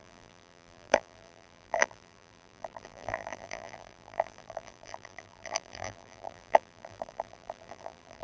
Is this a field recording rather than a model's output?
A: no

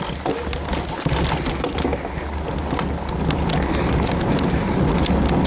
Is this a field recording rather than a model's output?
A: yes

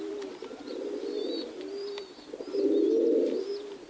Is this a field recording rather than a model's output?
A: yes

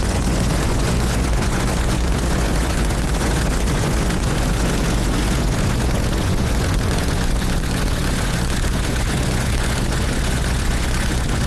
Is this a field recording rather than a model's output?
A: no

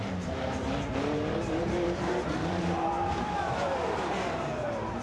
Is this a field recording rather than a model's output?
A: no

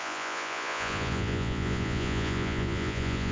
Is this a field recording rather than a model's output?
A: no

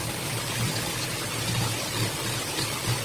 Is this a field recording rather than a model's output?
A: yes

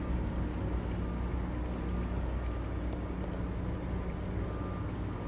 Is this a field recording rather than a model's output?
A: yes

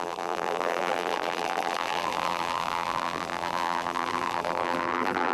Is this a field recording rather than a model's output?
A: no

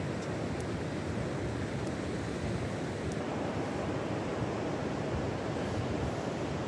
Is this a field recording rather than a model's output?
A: yes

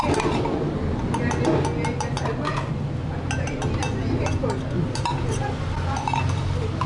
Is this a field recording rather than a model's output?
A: yes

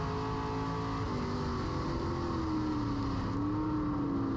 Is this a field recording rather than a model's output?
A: yes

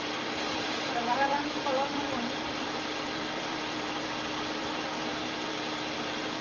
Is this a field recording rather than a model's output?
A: no